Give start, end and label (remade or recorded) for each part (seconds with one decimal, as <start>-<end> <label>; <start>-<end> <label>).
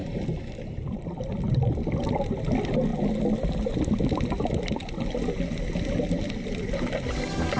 0.0-7.6 recorded